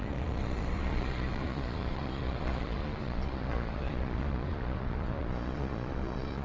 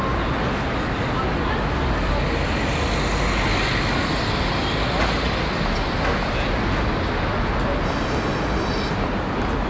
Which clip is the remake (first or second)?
first